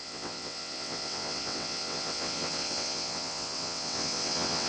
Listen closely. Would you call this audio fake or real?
fake